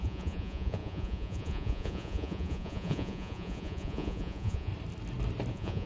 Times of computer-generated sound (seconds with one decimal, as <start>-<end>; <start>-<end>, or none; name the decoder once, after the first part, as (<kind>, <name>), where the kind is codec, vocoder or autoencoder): 0.0-4.7 (vocoder, Vocos); 5.5-5.9